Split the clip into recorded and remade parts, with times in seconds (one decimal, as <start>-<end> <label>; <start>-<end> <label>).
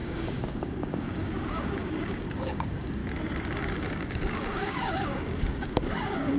0.0-3.0 remade; 3.0-3.6 recorded; 3.6-6.4 remade